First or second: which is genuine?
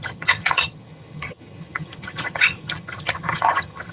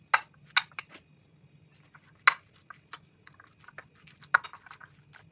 second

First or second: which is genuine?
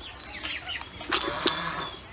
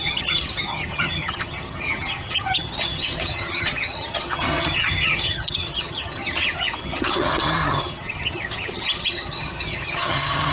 first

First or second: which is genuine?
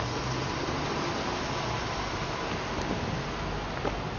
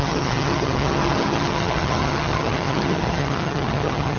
first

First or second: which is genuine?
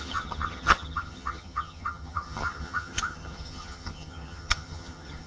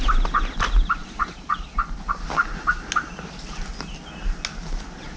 second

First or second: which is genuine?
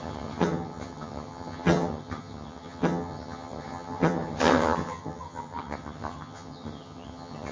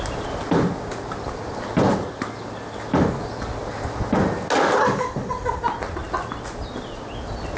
second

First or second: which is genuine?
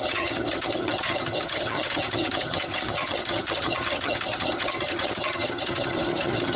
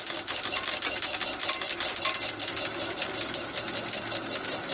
second